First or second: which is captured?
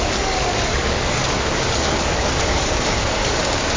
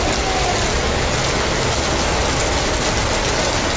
second